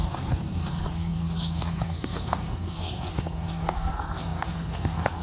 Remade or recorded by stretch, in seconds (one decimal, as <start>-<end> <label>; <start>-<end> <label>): 0.0-5.2 remade